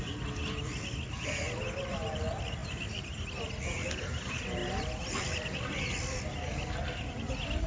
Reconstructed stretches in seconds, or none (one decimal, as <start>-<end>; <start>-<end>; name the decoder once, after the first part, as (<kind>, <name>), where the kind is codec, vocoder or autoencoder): 4.6-5.6 (vocoder, BigVGAN v2)